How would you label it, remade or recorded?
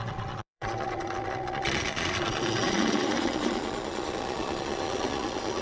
remade